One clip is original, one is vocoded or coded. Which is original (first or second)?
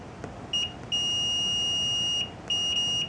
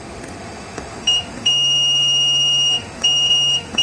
first